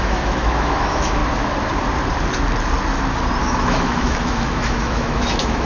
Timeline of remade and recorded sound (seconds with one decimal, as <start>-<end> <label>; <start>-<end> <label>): 0.0-1.2 remade; 1.2-3.4 recorded; 3.4-5.7 remade